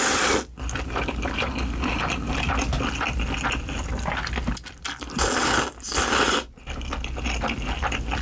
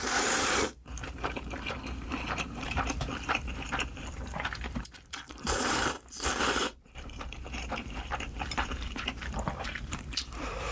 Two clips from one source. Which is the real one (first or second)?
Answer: first